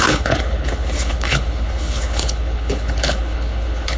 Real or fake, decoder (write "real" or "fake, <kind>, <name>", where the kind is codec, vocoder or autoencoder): fake, codec, HILCodec